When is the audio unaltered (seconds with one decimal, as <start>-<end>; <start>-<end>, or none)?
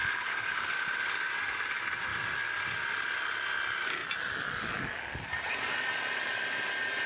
0.7-7.1